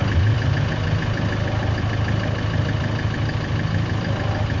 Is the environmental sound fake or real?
real